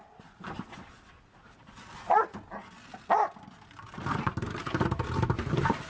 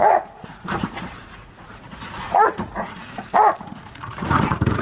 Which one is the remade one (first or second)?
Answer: second